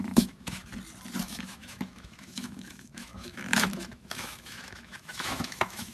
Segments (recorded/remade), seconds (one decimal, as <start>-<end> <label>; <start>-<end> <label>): 0.0-0.7 remade; 0.7-1.2 recorded; 1.2-5.9 remade